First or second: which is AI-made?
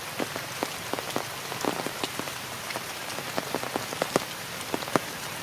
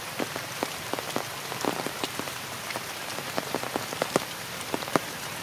second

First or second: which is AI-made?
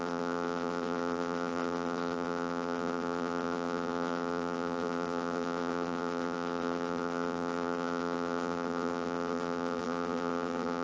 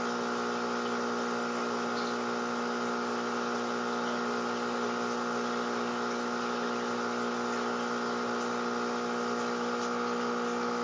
first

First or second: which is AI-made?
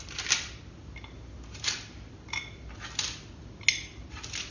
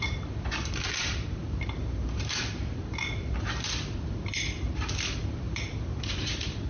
second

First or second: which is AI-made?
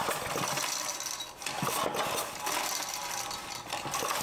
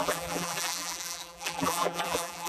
second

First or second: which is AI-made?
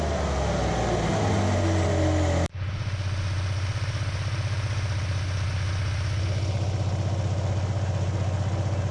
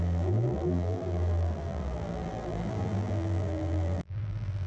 second